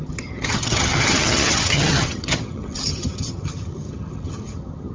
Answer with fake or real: fake